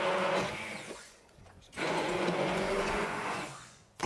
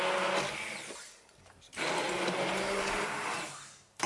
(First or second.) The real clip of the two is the second